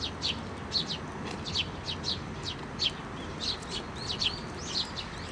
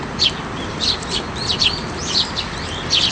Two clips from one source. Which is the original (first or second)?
first